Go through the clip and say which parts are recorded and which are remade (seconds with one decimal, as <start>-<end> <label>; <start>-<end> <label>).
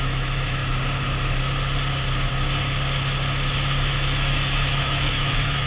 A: 0.0-0.6 remade; 0.6-3.8 recorded; 3.8-5.7 remade